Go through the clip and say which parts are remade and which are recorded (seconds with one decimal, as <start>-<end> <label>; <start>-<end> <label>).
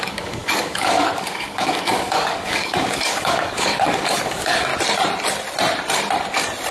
0.0-4.7 remade; 4.7-6.7 recorded